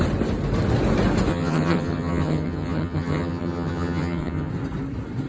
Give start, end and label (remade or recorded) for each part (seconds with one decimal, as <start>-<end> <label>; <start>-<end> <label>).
0.0-1.3 recorded; 1.3-4.5 remade; 4.5-5.3 recorded